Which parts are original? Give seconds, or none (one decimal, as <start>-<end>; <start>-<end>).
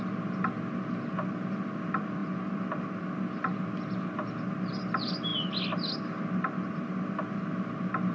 0.0-8.1